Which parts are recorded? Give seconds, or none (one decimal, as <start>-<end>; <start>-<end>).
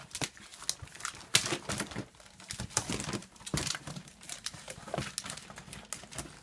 0.0-3.2; 5.0-6.4